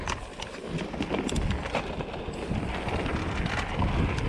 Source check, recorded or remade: recorded